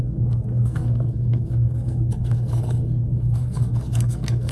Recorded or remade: remade